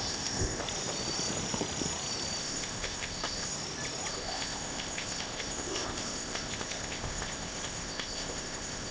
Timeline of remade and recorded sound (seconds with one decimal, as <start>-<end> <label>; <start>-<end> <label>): 0.0-0.6 remade; 0.6-2.4 recorded; 2.4-3.5 remade; 3.5-4.1 recorded; 4.1-8.9 remade